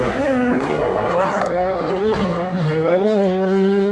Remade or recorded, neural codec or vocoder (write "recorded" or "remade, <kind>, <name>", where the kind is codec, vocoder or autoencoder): remade, codec, SNAC